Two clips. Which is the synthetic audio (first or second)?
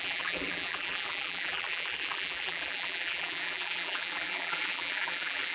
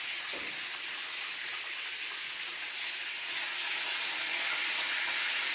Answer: first